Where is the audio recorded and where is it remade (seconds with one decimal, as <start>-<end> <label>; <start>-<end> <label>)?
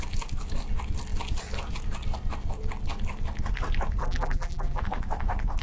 0.0-4.0 recorded; 4.0-4.8 remade; 4.8-5.6 recorded